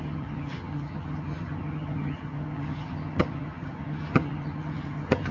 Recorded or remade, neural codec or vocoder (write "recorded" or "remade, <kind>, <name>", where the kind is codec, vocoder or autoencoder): remade, vocoder, HiFi-GAN